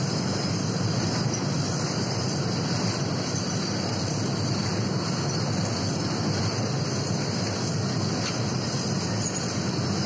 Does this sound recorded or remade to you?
recorded